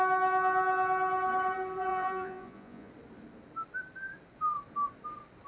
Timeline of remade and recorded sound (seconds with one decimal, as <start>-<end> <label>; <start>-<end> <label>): 0.0-1.9 recorded; 1.9-2.9 remade; 2.9-5.5 recorded